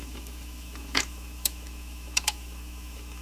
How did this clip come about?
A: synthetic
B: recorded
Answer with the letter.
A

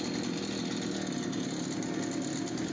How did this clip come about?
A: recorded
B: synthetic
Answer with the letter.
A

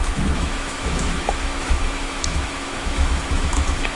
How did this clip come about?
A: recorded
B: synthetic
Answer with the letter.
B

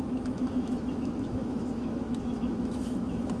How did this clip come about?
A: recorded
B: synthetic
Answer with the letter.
B